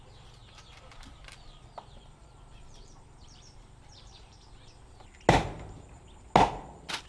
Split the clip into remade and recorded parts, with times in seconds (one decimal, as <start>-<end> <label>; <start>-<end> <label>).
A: 0.0-0.4 recorded; 0.4-4.4 remade; 4.4-7.1 recorded